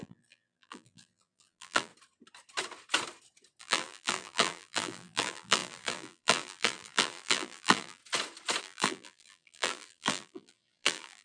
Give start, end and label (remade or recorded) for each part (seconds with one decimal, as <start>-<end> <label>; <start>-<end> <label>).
0.0-1.9 remade; 1.9-3.6 recorded; 3.6-8.0 remade; 8.0-8.6 recorded; 8.6-11.2 remade